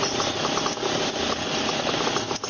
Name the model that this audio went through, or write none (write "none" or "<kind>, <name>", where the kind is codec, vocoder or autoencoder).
none